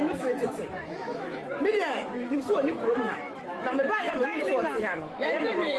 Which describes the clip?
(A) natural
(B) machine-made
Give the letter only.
B